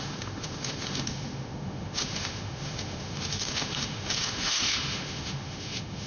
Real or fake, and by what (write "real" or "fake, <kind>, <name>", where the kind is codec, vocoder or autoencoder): fake, autoencoder, DAC-VAE